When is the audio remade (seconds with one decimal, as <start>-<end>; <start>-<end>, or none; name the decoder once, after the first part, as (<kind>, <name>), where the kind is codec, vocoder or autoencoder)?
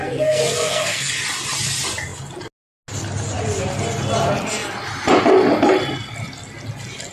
0.0-1.1 (codec, SNAC)